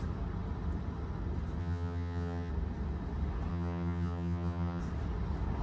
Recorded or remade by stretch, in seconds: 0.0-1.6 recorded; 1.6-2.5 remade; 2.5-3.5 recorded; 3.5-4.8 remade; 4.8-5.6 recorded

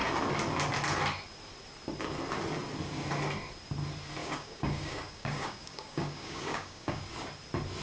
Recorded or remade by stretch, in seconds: 0.0-4.2 recorded; 4.2-7.0 remade; 7.0-7.8 recorded

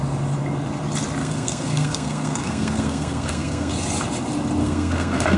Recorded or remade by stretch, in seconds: 0.0-1.2 recorded; 1.2-3.7 remade; 3.7-4.6 recorded; 4.6-5.4 remade